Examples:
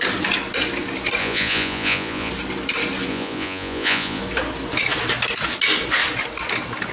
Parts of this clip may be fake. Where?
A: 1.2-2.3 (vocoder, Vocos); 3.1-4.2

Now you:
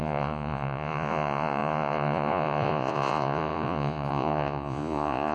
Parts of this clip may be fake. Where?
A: 0.0-5.3 (vocoder, Vocos)

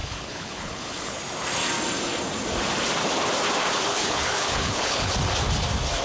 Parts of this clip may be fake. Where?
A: 0.0-1.2 (codec, HILCodec); 3.9-5.1

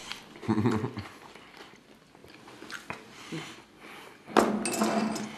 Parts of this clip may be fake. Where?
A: none

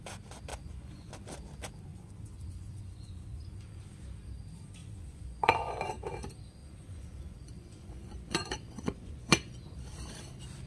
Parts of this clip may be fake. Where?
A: 0.5-1.1 (vocoder, Vocos); 1.9-3.8; 4.8-5.9; 6.6-9.7

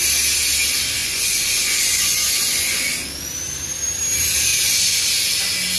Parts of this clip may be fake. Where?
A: 1.0-2.9 (vocoder, Vocos); 4.5-5.1